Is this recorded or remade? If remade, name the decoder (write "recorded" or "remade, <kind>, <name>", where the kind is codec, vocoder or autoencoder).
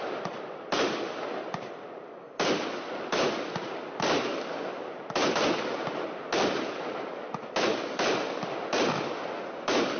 recorded